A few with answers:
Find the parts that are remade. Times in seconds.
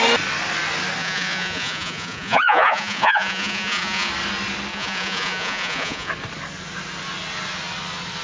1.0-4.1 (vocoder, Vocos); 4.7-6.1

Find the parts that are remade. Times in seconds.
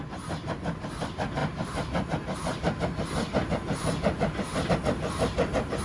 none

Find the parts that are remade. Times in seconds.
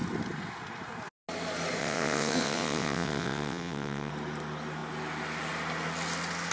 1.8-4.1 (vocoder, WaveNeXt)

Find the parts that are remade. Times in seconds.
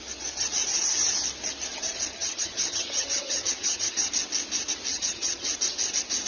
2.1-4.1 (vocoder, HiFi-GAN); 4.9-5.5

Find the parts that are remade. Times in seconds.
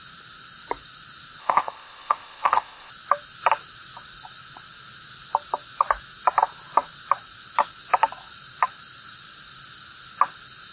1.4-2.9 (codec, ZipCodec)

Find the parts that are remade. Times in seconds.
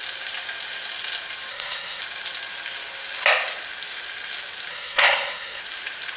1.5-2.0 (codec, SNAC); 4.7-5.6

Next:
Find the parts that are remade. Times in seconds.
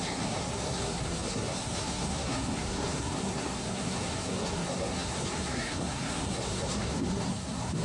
0.0-7.8 (codec, SNAC)